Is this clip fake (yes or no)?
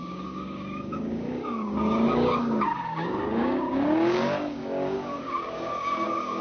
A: yes